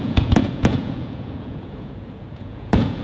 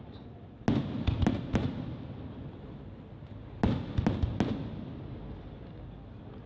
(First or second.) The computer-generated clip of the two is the first